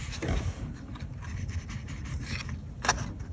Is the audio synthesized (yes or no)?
no